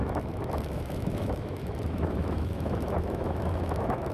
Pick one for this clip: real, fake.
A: fake